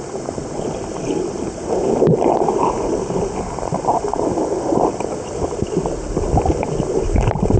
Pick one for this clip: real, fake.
real